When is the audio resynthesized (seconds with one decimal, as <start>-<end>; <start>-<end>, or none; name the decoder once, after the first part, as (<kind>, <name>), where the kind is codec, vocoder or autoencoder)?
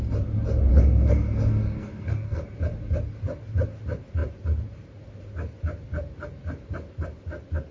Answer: 0.7-2.4 (codec, SNAC)